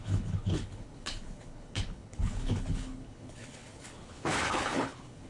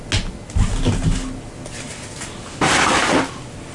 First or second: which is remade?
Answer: first